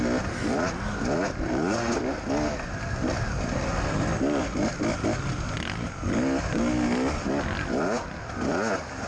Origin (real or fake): real